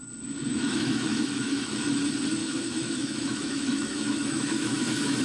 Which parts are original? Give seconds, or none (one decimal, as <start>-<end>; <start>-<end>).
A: 0.0-0.5; 2.0-2.4